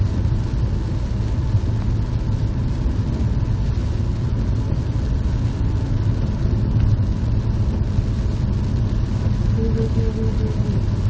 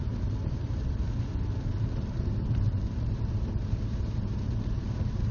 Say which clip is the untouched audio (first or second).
first